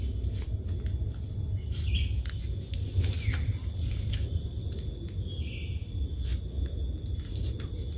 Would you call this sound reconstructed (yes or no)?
no